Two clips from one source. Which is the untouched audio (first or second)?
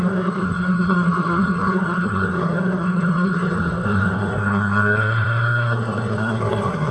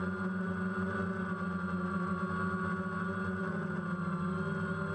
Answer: second